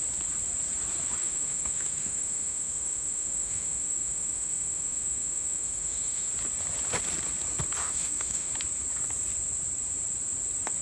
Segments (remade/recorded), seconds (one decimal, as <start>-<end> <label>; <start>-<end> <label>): 0.0-1.2 recorded; 1.2-6.3 remade; 6.3-7.8 recorded; 7.8-8.5 remade; 8.5-10.8 recorded

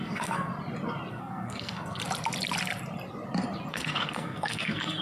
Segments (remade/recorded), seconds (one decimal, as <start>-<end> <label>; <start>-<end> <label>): 0.0-0.5 remade; 0.5-1.1 recorded; 1.1-2.0 remade; 2.0-3.7 recorded; 3.7-5.0 remade

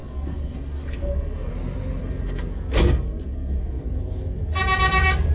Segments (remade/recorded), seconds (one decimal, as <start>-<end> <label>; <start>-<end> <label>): 0.0-1.5 remade; 1.5-2.0 recorded; 2.0-4.6 remade; 4.6-5.3 recorded

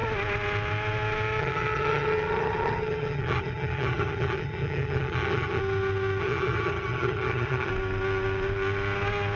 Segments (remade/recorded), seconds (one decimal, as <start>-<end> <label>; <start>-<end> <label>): 0.0-1.4 recorded; 1.4-5.6 remade; 5.6-6.2 recorded; 6.2-7.7 remade; 7.7-9.4 recorded

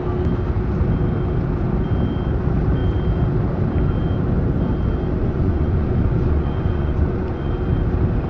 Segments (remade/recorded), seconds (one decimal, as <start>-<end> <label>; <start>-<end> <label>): 0.0-5.2 recorded; 5.2-7.5 remade; 7.5-8.3 recorded

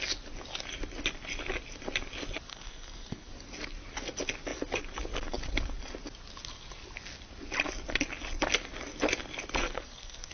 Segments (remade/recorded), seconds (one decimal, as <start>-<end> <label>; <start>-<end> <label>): 0.0-2.5 recorded; 2.5-3.3 remade; 3.3-9.6 recorded; 9.6-10.3 remade